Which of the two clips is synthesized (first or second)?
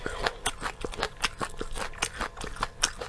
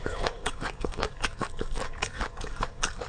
second